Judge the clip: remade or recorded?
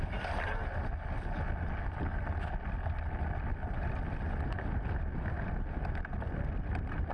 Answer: recorded